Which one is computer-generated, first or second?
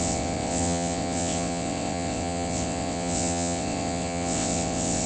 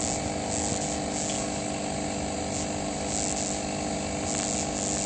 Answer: first